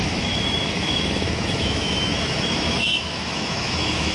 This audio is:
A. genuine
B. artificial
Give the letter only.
B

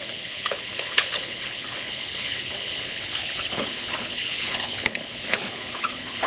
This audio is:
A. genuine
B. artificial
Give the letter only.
B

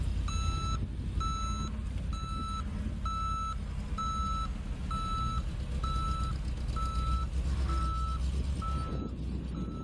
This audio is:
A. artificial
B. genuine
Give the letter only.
B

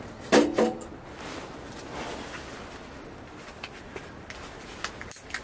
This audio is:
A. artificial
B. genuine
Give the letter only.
B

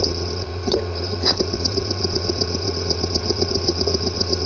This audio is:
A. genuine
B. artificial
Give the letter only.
B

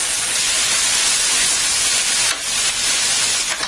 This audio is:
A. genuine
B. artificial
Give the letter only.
B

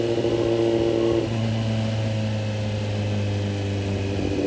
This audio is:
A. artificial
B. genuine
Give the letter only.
B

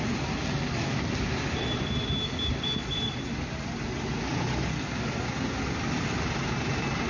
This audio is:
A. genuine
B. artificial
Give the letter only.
A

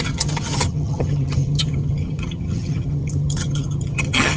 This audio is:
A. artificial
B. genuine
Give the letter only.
A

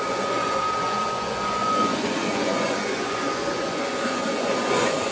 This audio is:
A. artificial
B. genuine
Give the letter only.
A